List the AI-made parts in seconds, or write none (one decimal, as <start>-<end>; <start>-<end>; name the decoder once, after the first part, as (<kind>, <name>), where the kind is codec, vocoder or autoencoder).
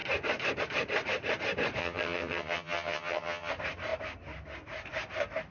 1.8-3.5 (vocoder, HiFi-GAN)